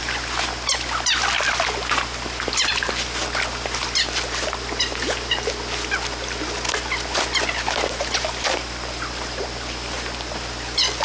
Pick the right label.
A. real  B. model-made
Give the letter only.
A